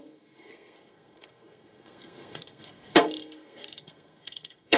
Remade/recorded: remade